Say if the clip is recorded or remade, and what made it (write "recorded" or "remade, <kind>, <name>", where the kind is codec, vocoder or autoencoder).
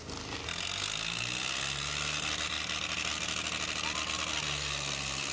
recorded